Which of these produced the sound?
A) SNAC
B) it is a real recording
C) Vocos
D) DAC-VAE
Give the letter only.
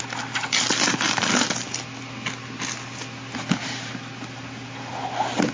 B